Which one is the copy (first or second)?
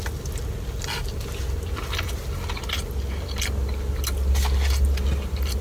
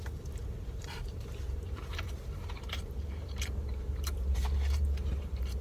second